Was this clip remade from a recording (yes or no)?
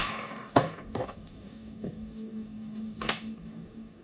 yes